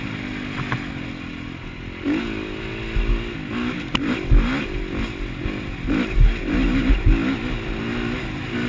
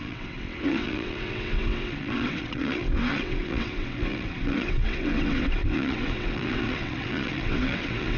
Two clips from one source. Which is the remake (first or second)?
second